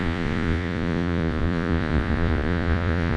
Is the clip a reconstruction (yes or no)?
yes